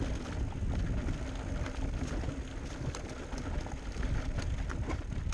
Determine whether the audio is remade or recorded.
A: recorded